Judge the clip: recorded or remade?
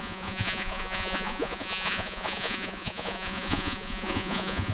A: remade